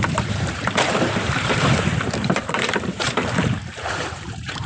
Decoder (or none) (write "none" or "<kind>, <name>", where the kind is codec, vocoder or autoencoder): vocoder, BigVGAN v2